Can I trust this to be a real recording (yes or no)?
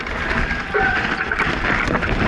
yes